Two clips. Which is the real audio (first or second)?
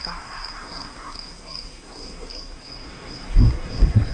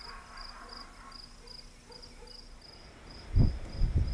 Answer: second